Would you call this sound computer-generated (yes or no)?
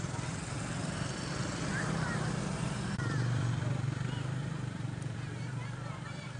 yes